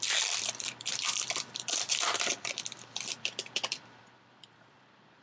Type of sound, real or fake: fake